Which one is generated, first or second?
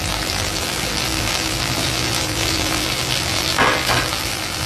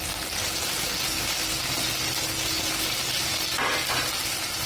first